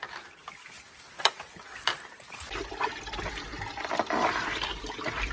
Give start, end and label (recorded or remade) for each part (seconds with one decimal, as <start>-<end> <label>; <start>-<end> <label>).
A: 0.0-5.3 recorded